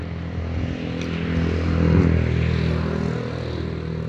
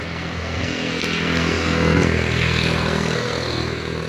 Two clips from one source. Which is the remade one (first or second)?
second